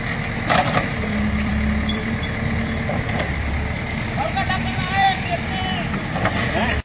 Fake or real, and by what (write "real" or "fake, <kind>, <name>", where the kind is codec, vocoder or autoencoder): fake, vocoder, BigVGAN v2